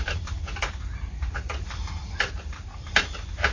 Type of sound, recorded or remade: remade